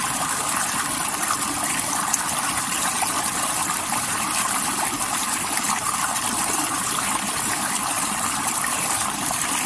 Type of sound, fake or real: fake